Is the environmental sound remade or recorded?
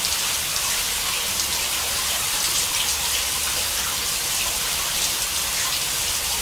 remade